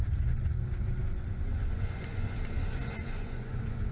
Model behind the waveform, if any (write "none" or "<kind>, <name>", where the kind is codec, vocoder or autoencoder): vocoder, Vocos